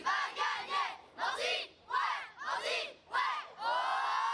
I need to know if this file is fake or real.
real